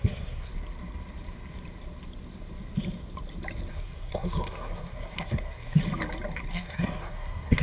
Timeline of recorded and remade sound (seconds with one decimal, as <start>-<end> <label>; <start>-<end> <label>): 0.0-0.5 remade; 0.5-3.7 recorded; 3.7-5.8 remade; 5.8-6.5 recorded; 6.5-7.6 remade